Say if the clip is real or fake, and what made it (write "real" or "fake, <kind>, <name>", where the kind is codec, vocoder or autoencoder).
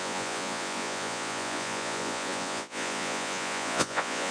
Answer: fake, vocoder, Vocos